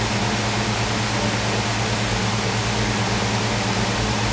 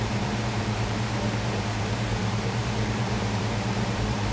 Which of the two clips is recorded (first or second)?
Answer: first